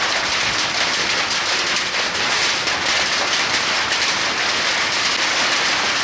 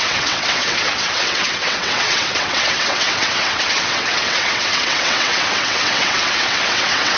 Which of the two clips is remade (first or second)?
second